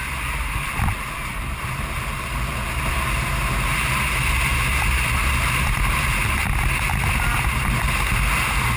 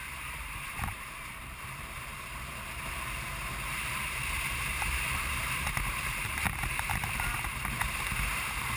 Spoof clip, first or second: second